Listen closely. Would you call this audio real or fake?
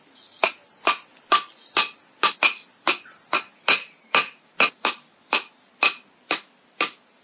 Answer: real